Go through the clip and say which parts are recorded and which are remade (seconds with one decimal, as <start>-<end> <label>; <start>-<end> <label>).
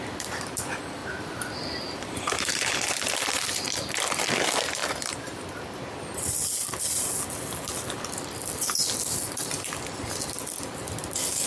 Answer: 0.0-1.0 recorded; 1.0-4.2 remade; 4.2-4.8 recorded; 4.8-5.8 remade; 5.8-11.5 recorded